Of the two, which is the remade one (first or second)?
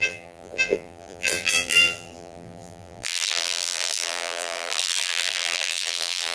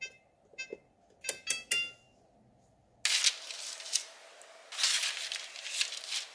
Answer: first